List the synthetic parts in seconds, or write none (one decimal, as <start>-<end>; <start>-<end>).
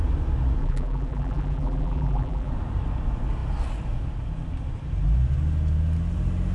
0.6-2.5